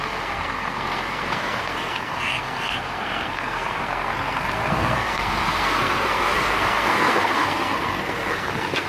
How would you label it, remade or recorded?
remade